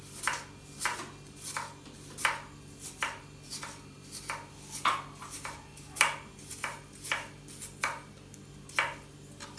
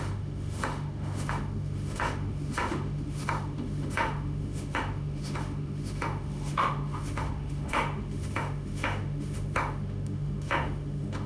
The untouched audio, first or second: first